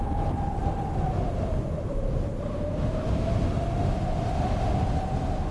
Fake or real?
real